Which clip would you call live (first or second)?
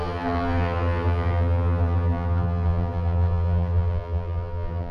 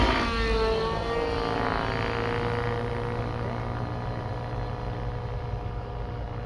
second